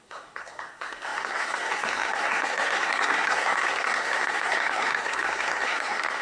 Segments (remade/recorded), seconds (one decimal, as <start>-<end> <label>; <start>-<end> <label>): 0.0-6.2 remade